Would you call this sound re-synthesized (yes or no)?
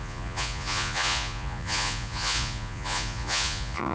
yes